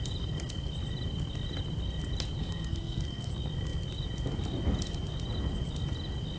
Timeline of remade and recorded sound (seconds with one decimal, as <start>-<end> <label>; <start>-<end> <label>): 0.0-2.4 recorded; 2.4-3.3 remade; 3.3-6.4 recorded